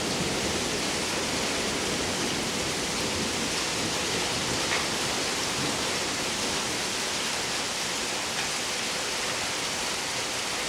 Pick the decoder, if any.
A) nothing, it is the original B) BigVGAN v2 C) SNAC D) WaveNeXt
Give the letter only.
A